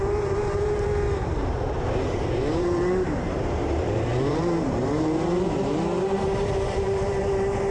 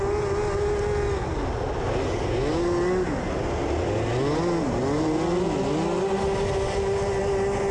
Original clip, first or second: second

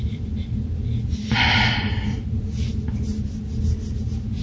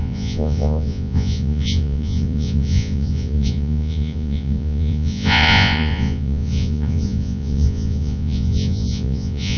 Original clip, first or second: first